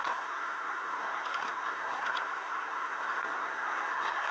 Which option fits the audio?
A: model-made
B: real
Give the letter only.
A